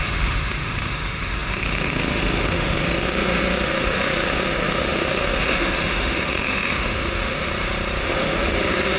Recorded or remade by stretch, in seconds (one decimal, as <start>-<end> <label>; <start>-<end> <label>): 0.0-7.5 remade; 7.5-8.0 recorded; 8.0-9.0 remade